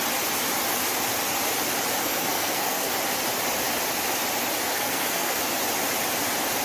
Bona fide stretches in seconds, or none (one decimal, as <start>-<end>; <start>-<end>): 0.0-2.0; 2.9-4.7; 5.4-6.6